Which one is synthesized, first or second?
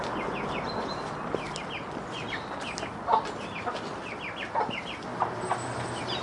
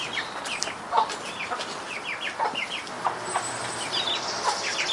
second